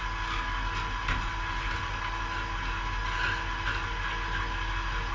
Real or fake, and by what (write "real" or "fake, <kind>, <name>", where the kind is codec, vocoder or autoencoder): real